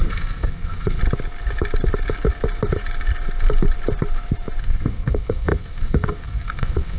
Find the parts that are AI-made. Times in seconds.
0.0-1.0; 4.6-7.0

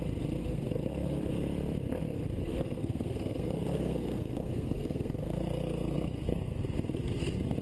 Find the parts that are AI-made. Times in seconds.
0.4-1.3; 2.4-6.6

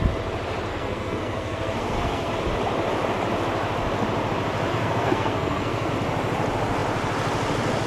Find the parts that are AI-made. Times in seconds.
0.7-2.3; 4.7-5.9

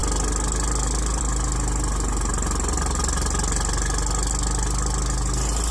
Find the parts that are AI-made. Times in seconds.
none

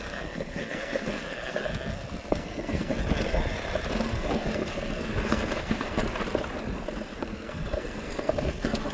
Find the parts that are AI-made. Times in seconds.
0.0-1.7; 2.3-2.9; 3.9-6.0; 7.2-8.9

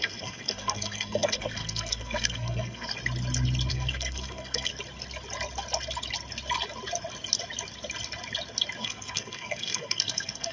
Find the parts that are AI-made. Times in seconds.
0.0-2.9; 3.7-4.7; 8.8-10.5

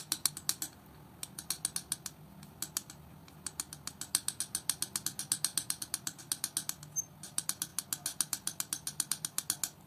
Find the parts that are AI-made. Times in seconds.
none

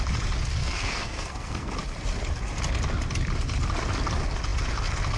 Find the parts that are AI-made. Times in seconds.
0.6-1.7